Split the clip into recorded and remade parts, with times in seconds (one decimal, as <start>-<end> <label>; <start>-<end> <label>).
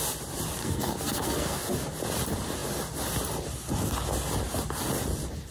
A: 0.0-0.6 recorded; 0.6-1.6 remade; 1.6-5.5 recorded